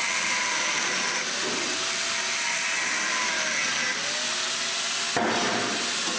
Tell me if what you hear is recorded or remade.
recorded